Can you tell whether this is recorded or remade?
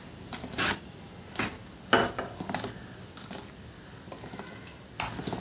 recorded